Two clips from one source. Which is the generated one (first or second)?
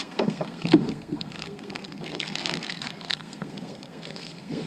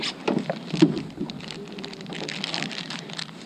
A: first